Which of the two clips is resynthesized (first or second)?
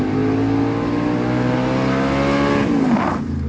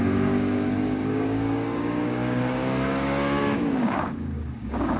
second